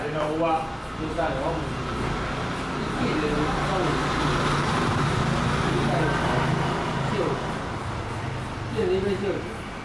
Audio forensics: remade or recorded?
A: recorded